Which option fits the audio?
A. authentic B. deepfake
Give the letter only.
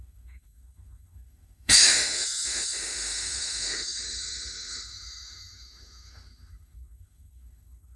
B